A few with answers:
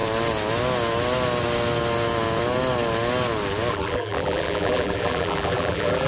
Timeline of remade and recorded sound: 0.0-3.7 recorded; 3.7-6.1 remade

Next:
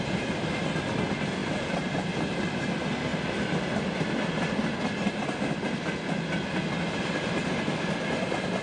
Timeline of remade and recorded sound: 0.0-1.4 recorded; 1.4-2.6 remade; 2.6-8.6 recorded

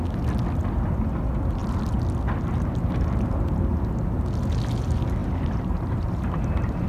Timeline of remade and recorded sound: 0.0-5.2 recorded; 5.2-6.9 remade